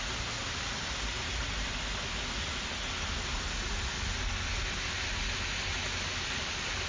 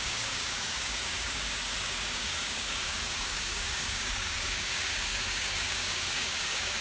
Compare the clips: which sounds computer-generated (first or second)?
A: second